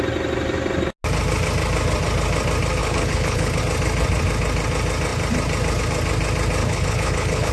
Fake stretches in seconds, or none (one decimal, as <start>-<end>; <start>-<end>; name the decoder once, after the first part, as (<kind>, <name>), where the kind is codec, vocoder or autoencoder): 2.8-3.6 (codec, HILCodec); 6.6-7.5